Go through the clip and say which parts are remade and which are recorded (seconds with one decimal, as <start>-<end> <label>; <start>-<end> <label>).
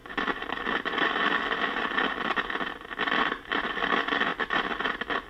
0.0-3.2 recorded; 3.2-4.3 remade; 4.3-5.3 recorded